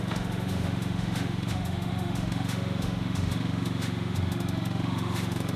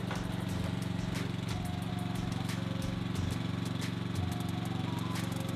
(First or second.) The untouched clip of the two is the second